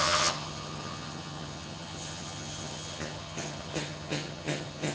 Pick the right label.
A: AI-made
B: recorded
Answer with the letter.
A